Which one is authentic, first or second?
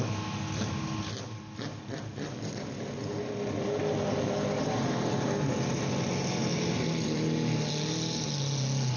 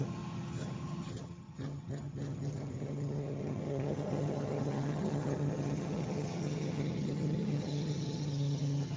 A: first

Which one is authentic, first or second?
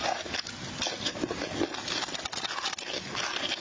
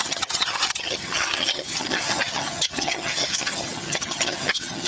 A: first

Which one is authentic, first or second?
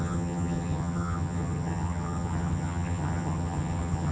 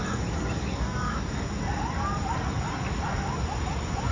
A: second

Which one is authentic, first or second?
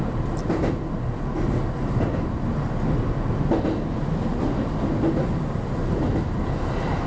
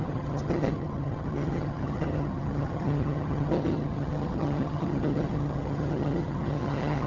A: first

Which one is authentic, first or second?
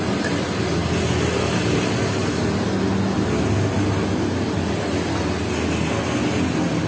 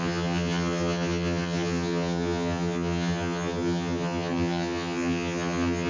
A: first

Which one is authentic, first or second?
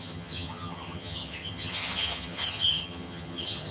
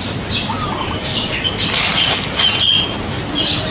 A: second